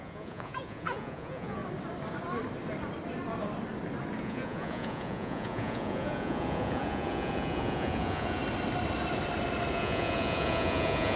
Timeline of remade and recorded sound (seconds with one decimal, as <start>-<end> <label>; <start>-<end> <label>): 0.0-1.6 remade; 1.6-4.2 recorded; 4.2-8.4 remade; 8.4-9.7 recorded; 9.7-11.2 remade